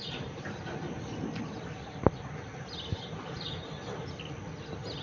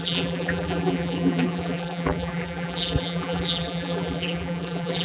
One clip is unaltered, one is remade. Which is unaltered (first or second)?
first